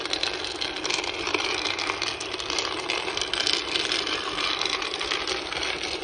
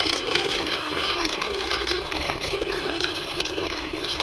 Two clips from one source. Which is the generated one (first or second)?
second